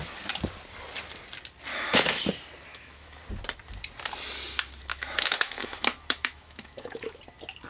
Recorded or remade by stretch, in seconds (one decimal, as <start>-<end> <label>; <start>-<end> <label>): 0.0-1.7 recorded; 1.7-2.2 remade; 2.2-2.7 recorded; 2.7-3.2 remade; 3.2-4.9 recorded; 4.9-7.2 remade; 7.2-7.7 recorded